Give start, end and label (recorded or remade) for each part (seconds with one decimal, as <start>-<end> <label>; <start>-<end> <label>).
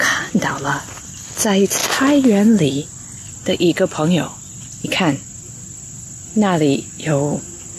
0.0-7.8 recorded